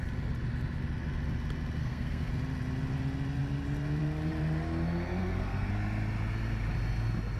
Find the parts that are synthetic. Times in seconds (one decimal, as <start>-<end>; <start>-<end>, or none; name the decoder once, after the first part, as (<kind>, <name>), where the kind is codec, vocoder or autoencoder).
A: 1.8-2.3 (codec, SNAC); 5.2-5.7